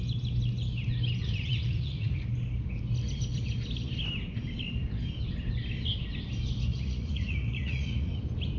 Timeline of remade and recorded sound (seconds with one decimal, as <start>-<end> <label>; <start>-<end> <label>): 0.0-1.2 recorded; 1.2-2.2 remade; 2.2-6.7 recorded; 6.7-8.2 remade; 8.2-8.6 recorded